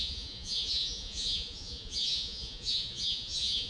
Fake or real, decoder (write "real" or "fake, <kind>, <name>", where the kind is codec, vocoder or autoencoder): fake, vocoder, Vocos